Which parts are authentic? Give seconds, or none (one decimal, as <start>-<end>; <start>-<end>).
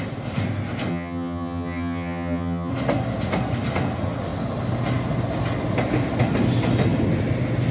0.0-0.9; 2.7-7.7